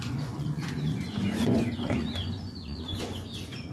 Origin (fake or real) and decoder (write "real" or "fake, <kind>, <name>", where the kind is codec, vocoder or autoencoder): fake, vocoder, Vocos